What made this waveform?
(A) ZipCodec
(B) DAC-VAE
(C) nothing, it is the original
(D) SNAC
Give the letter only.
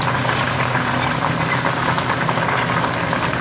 C